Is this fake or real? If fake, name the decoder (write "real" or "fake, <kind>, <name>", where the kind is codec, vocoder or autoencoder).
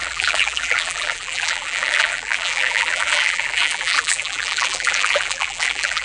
fake, vocoder, BigVGAN v2